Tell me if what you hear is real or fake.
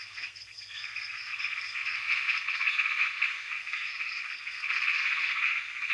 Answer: fake